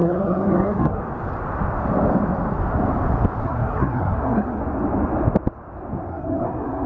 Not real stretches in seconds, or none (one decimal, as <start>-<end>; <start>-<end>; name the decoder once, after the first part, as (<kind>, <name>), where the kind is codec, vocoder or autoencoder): 0.0-1.0 (codec, SNAC); 3.4-4.6; 6.1-6.9